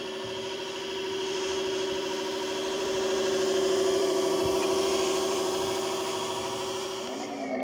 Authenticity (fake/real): fake